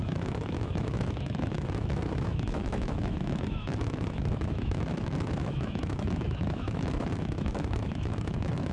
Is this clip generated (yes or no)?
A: yes